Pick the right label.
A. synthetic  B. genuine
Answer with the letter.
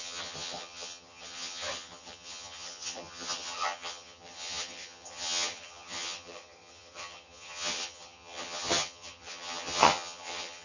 A